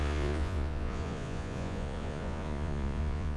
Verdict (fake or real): fake